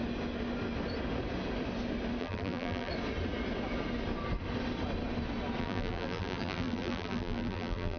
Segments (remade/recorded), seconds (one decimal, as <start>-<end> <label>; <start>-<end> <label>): 0.0-2.2 recorded; 2.2-2.9 remade; 2.9-5.6 recorded; 5.6-8.0 remade